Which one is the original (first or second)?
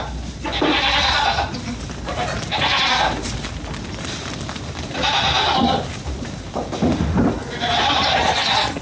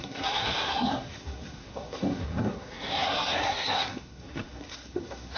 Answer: first